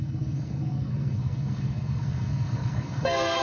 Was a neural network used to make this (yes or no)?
yes